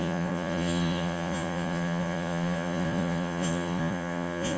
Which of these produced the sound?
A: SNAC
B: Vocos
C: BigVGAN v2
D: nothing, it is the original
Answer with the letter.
B